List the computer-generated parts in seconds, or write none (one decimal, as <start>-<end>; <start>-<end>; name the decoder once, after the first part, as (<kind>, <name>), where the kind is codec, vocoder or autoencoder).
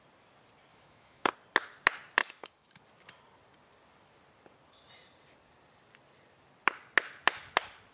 0.7-1.3 (autoencoder, DAC-VAE); 2.2-2.8